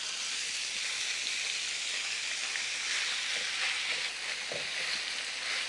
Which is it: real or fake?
real